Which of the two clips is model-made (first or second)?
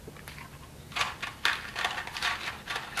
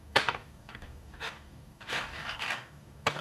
second